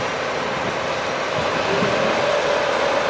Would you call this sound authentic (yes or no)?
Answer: yes